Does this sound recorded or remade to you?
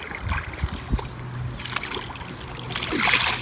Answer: recorded